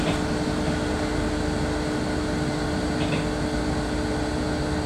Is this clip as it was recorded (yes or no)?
yes